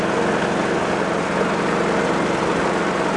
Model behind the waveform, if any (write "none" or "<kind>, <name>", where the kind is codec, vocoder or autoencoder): none